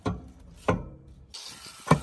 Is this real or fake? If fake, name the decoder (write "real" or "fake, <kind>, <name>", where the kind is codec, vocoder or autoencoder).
real